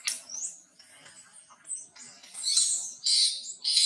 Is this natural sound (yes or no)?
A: yes